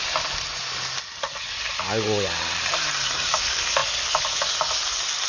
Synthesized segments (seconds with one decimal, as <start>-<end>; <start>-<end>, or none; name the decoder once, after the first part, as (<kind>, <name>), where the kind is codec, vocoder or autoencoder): none